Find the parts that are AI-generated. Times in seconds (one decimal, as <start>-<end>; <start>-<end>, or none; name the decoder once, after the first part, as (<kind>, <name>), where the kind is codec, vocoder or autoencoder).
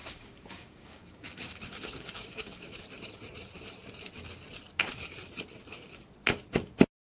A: 0.0-2.8 (codec, DAC)